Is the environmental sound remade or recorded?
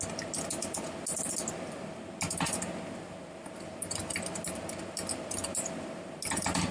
recorded